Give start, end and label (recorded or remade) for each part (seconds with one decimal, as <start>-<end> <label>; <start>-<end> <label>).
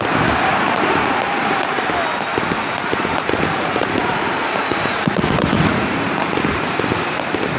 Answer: 0.0-0.5 recorded; 0.5-1.8 remade; 1.8-2.3 recorded; 2.3-6.8 remade; 6.8-7.6 recorded